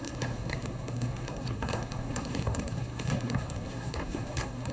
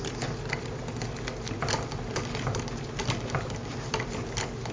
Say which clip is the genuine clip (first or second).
second